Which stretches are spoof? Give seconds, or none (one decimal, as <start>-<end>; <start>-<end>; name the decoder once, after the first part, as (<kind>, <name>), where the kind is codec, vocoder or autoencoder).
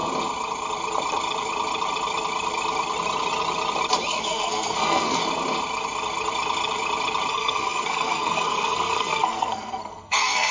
4.1-5.2 (codec, SNAC); 7.3-10.5